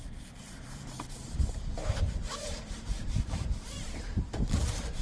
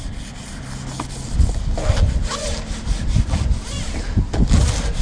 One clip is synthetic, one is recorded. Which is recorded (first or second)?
second